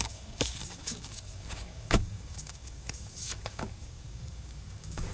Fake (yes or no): yes